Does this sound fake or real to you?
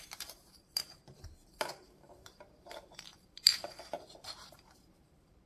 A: fake